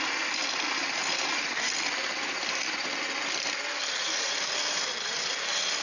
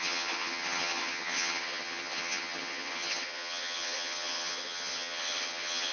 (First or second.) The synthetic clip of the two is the second